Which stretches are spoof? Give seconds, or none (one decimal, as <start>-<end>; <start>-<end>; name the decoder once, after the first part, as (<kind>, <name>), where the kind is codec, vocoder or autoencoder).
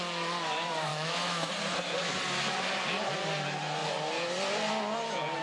0.9-1.5 (autoencoder, DAC-VAE)